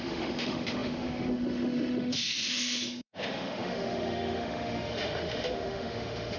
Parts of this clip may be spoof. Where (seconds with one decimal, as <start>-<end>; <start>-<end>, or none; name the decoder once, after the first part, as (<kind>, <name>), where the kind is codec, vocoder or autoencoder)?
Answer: 0.0-6.4 (autoencoder, DAC-VAE)